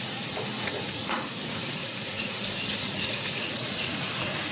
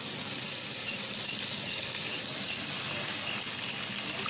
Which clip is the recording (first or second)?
second